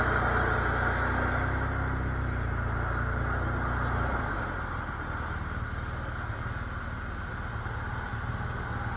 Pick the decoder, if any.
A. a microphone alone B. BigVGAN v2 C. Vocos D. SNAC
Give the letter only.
A